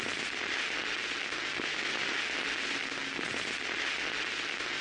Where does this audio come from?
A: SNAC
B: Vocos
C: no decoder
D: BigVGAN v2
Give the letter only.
C